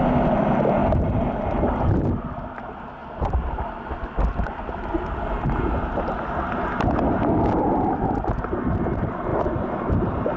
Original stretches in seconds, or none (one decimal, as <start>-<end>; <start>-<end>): 0.8-1.4; 3.0-7.6